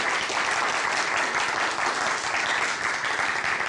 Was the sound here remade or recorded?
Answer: recorded